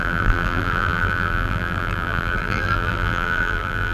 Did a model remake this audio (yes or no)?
yes